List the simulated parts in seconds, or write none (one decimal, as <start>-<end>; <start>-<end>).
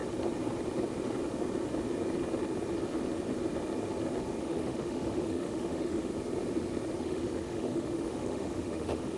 4.4-6.1; 7.0-9.2